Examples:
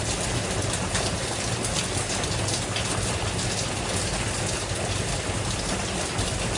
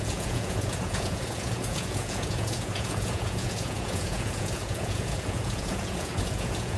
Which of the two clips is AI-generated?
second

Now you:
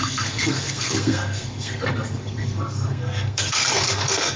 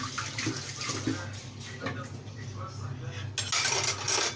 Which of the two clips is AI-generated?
first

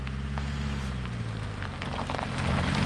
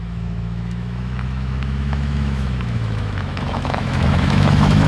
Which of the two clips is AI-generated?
second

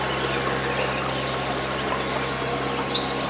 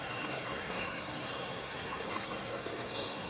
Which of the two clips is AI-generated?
second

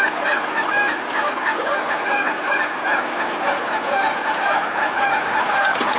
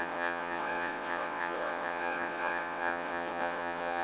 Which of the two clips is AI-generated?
second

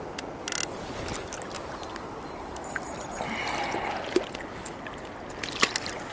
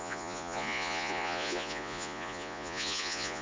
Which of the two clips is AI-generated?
second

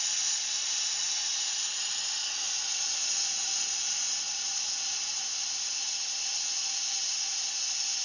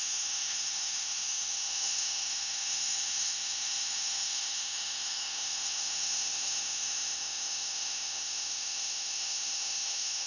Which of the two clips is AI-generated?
second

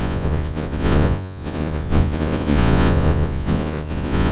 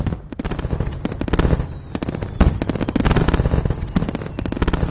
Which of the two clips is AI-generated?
first